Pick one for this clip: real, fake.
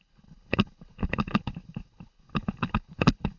fake